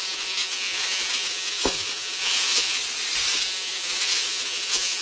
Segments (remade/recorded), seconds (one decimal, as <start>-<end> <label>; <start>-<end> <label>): 0.0-2.8 remade; 2.8-3.3 recorded; 3.3-5.0 remade